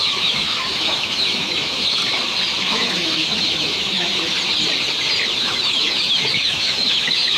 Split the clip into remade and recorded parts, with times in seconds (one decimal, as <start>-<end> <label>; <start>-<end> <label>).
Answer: 0.0-2.0 remade; 2.0-2.6 recorded; 2.6-4.1 remade; 4.1-5.4 recorded; 5.4-7.4 remade